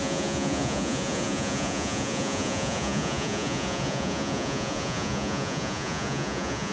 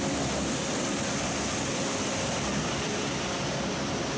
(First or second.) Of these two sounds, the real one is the second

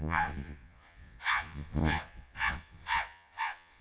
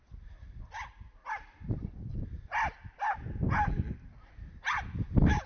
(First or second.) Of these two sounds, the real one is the second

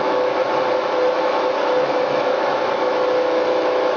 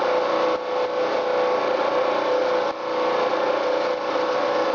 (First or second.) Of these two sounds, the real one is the second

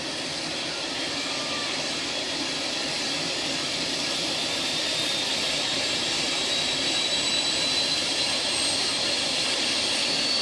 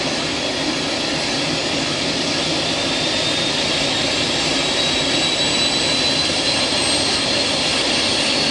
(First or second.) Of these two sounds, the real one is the second